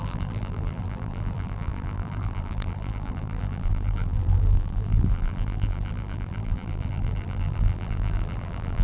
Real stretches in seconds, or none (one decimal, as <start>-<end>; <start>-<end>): none